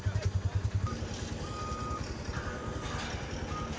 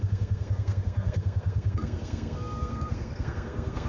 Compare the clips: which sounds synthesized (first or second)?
second